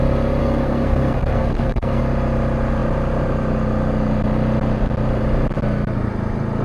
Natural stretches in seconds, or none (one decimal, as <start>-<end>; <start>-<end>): 0.0-0.4; 2.0-6.6

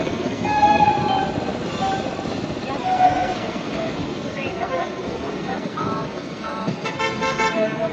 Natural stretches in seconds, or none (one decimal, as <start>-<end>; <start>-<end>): 0.9-2.8

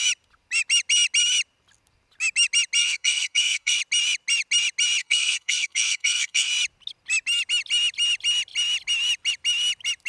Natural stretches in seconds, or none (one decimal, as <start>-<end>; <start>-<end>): 0.0-2.8; 3.8-5.0; 6.5-10.1

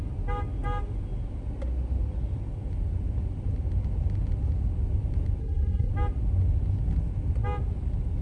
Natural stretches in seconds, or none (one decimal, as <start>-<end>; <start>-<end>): 0.0-5.4; 5.9-8.2

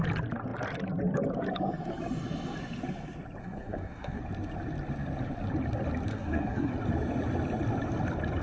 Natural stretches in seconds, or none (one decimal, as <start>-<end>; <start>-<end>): 0.0-3.4; 4.2-6.1; 6.7-8.4

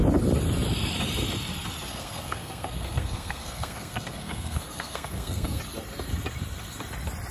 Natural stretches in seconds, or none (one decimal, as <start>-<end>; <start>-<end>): 0.0-1.9; 5.6-7.3

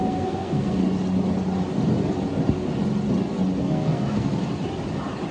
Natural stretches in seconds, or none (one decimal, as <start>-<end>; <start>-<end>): 0.8-3.6; 4.3-5.3

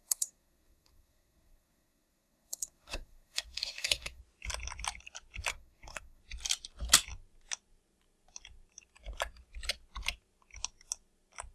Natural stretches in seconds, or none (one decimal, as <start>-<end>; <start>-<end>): 4.2-5.5; 6.2-11.5